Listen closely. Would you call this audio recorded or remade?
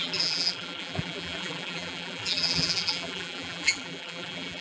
remade